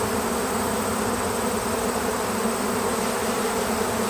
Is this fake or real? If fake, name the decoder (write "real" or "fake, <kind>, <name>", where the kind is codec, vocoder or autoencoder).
real